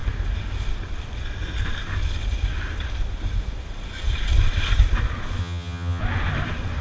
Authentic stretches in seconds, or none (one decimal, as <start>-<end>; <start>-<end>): 0.0-5.4; 6.0-6.8

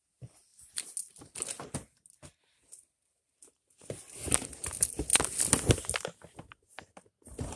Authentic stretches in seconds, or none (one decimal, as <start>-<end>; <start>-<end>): 0.0-7.6

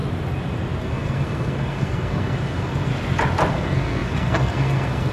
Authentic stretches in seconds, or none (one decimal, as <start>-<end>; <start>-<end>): 0.0-0.8; 2.9-3.5

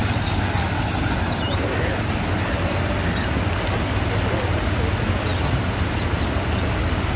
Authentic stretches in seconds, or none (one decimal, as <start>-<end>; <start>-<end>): 0.0-7.2

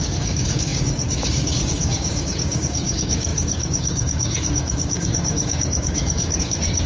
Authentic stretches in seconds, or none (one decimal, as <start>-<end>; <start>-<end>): none